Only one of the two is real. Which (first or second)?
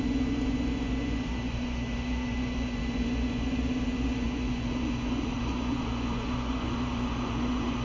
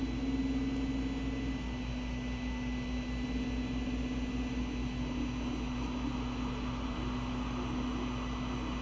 second